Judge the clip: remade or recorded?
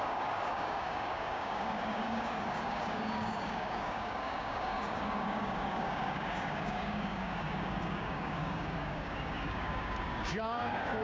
remade